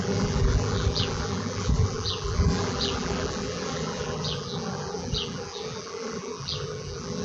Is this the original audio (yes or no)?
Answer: no